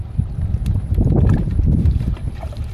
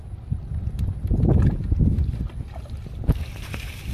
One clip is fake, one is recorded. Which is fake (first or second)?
first